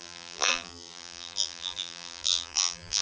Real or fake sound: fake